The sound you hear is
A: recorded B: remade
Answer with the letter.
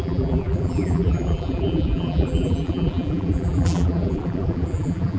B